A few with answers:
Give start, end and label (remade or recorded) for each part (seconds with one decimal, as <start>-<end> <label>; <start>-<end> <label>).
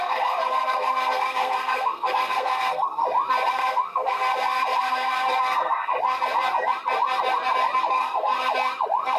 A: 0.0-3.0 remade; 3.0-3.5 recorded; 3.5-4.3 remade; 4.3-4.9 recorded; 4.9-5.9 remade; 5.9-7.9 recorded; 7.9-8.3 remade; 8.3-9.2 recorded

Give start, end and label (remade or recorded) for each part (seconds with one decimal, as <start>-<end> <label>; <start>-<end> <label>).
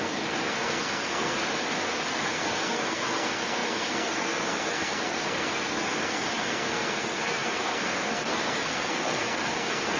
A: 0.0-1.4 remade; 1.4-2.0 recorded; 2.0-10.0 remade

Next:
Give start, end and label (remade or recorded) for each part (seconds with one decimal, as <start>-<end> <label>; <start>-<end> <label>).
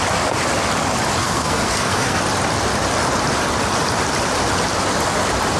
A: 0.0-1.2 recorded; 1.2-2.2 remade; 2.2-5.6 recorded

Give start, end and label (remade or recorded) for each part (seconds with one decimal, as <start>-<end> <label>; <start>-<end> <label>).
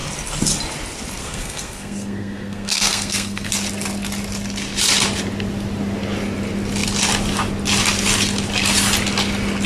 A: 0.0-1.2 recorded; 1.2-3.5 remade; 3.5-9.7 recorded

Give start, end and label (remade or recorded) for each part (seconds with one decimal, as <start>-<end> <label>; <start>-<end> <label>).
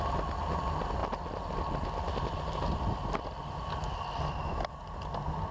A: 0.0-5.5 recorded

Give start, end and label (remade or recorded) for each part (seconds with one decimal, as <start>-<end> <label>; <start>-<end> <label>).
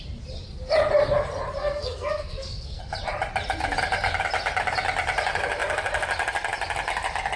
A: 0.0-1.6 recorded; 1.6-2.8 remade; 2.8-7.4 recorded